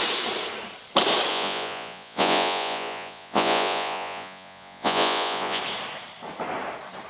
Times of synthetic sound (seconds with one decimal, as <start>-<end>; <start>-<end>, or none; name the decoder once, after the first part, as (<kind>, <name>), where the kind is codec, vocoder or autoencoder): 1.3-5.6 (vocoder, Vocos)